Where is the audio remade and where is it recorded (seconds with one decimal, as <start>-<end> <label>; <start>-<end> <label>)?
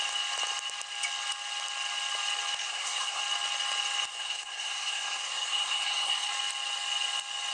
0.0-2.6 recorded; 2.6-3.2 remade; 3.2-4.1 recorded; 4.1-6.3 remade; 6.3-7.5 recorded